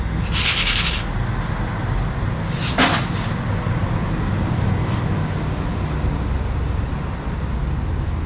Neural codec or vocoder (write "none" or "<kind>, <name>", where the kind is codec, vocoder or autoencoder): none